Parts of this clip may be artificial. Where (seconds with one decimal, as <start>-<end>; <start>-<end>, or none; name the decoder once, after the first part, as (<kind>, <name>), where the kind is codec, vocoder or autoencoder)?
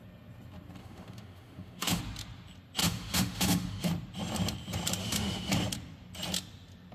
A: 0.8-2.0 (autoencoder, DAC-VAE); 2.8-3.9; 5.0-5.5